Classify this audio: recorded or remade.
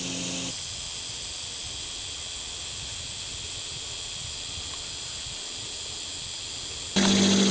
recorded